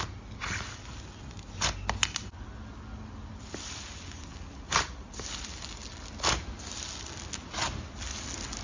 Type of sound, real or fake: real